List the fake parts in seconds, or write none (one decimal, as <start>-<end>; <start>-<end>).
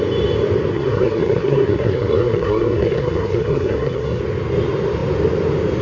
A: 0.7-4.2